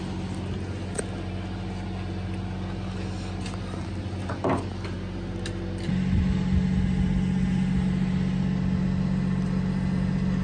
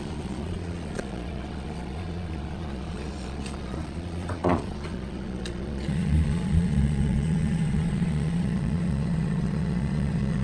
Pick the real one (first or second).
first